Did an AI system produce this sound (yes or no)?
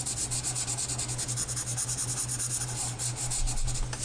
no